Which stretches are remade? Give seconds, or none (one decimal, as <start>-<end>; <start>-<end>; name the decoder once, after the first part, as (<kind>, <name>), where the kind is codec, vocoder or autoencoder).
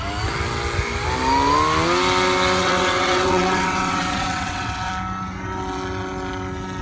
2.6-4.9 (vocoder, WaveNeXt)